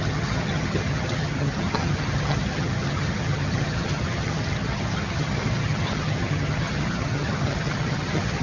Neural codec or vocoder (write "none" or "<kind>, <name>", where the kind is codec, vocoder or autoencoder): vocoder, HiFi-GAN